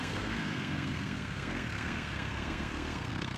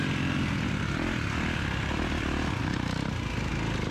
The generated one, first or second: first